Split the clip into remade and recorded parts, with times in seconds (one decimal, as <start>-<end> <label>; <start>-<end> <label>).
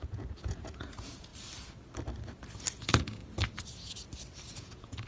0.0-1.3 remade; 1.3-2.7 recorded; 2.7-3.2 remade; 3.2-4.5 recorded; 4.5-5.1 remade